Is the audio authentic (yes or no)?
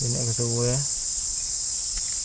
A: yes